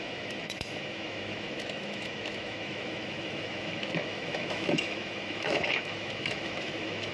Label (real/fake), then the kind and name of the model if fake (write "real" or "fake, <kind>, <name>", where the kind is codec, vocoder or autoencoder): fake, autoencoder, DAC-VAE